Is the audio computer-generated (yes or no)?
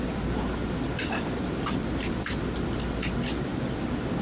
no